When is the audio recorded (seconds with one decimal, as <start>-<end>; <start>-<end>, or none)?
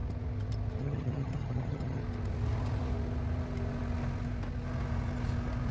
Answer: 0.0-0.8; 2.0-5.7